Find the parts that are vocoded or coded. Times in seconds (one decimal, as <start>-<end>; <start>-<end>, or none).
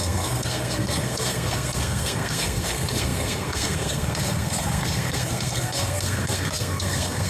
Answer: 0.0-7.3